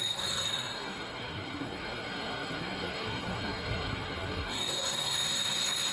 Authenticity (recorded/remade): remade